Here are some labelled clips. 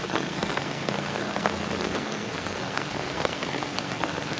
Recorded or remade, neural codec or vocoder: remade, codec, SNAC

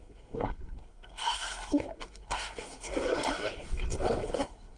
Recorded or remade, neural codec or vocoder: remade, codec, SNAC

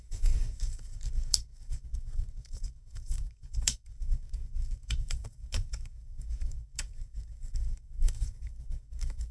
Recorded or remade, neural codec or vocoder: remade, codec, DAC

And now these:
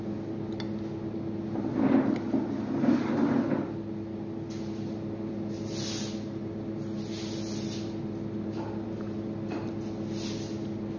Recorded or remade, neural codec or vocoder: recorded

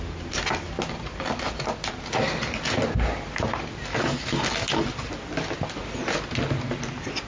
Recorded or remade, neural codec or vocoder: recorded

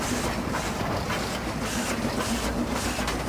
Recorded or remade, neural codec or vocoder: recorded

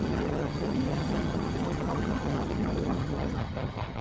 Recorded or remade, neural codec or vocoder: remade, vocoder, HiFi-GAN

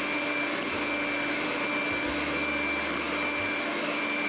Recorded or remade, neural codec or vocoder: recorded